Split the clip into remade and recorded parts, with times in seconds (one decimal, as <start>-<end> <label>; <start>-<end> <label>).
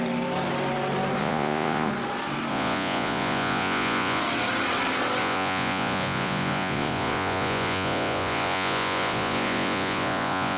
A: 0.0-1.2 recorded; 1.2-1.9 remade; 1.9-2.5 recorded; 2.5-4.2 remade; 4.2-5.2 recorded; 5.2-10.6 remade